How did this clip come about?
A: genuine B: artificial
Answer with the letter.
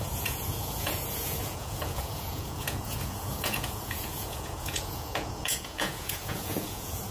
B